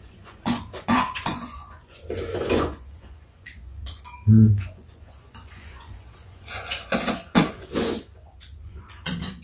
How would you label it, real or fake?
fake